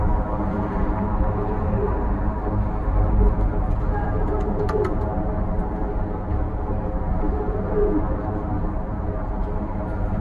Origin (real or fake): fake